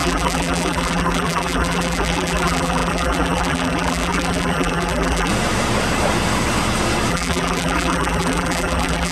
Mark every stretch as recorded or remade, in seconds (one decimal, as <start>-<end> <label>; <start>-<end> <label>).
0.0-5.3 remade; 5.3-7.1 recorded; 7.1-9.1 remade